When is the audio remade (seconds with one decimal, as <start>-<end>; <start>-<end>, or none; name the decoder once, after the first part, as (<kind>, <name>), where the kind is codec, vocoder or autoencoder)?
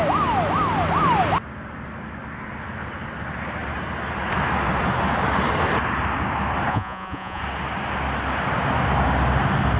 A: 6.7-7.4 (vocoder, Vocos)